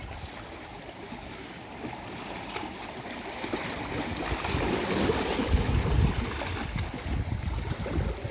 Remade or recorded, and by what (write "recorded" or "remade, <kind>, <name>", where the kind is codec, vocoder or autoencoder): recorded